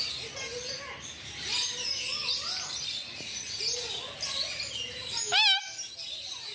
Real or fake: real